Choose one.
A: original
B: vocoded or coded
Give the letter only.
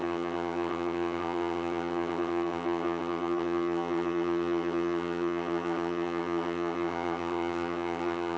B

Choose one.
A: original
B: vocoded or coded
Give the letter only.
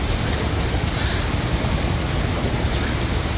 A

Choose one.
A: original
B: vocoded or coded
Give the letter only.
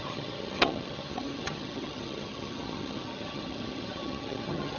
B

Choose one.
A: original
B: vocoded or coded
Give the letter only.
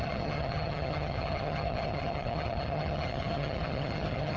B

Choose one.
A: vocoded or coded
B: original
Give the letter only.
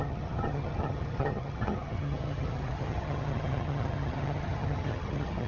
A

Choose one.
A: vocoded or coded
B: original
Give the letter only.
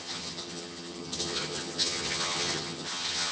A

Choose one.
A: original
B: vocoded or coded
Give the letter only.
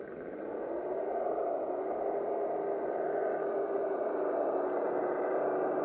A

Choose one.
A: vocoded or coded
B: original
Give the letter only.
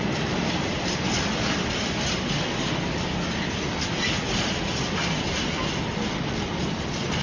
B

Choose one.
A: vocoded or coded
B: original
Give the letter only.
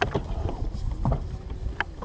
B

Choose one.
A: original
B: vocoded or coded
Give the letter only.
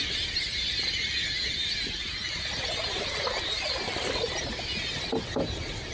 A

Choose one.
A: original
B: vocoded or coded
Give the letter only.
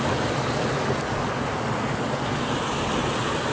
A